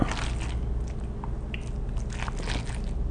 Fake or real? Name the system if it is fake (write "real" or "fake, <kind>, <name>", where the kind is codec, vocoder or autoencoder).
real